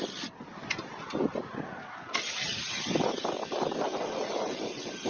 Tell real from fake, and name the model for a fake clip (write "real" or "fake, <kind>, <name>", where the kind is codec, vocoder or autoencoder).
real